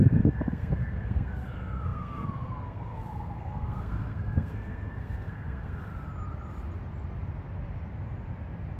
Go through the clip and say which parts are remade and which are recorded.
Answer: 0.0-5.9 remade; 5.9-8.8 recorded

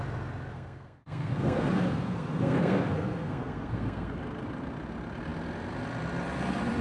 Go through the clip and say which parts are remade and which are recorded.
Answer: 0.0-0.5 recorded; 0.5-4.2 remade; 4.2-6.8 recorded

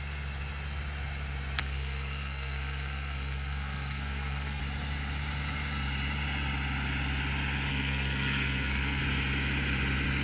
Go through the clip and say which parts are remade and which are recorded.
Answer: 0.0-1.6 recorded; 1.6-4.6 remade; 4.6-7.7 recorded; 7.7-9.0 remade; 9.0-10.2 recorded